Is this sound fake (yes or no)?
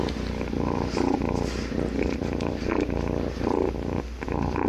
no